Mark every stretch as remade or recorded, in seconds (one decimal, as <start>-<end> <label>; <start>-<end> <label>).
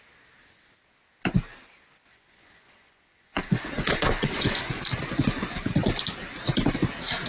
0.0-2.1 recorded; 2.1-4.7 remade; 4.7-7.3 recorded